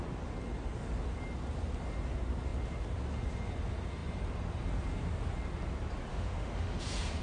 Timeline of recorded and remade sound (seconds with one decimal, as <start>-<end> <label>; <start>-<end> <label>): 0.0-6.1 recorded; 6.1-6.8 remade; 6.8-7.2 recorded